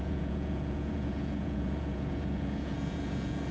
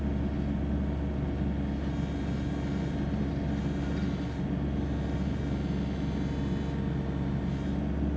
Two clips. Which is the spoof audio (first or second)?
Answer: first